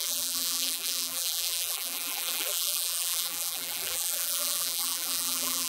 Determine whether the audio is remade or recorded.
remade